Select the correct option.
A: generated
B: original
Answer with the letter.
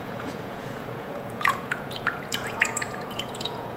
A